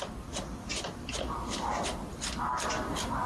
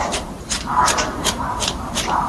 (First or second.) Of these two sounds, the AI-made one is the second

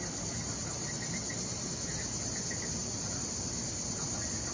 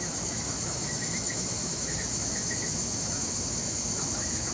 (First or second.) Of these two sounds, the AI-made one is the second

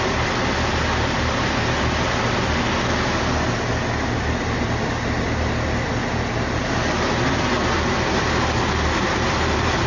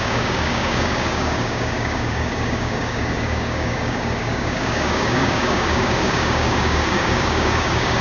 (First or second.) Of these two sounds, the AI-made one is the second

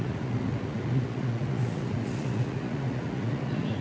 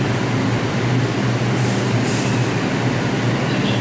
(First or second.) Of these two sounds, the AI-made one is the first